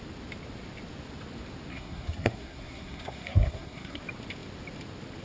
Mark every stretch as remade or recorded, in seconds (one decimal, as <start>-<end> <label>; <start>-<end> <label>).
0.0-1.7 recorded; 1.7-4.0 remade; 4.0-5.2 recorded